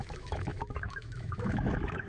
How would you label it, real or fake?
fake